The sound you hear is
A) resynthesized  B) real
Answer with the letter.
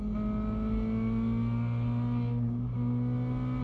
B